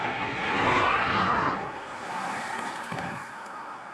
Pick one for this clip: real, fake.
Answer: fake